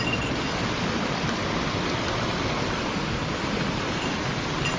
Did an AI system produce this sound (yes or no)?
no